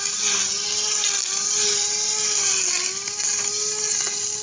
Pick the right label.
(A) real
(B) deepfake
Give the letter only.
A